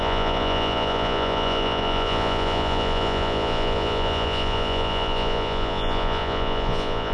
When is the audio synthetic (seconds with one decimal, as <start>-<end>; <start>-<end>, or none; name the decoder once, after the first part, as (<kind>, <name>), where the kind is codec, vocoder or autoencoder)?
0.0-7.1 (vocoder, Vocos)